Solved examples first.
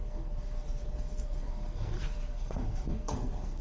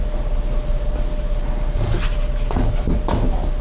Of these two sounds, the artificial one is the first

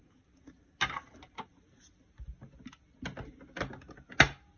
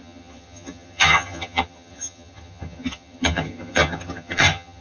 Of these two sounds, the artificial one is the second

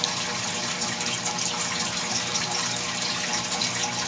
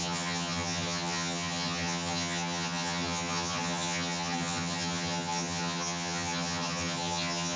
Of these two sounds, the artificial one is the second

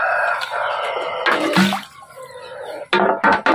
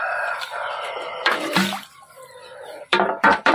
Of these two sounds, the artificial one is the second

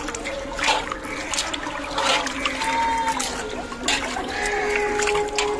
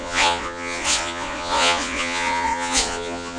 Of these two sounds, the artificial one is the second